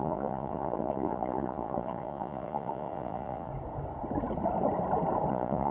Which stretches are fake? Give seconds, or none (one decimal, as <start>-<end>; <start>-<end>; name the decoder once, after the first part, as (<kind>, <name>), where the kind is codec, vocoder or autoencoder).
0.0-3.5 (vocoder, Vocos); 5.3-5.7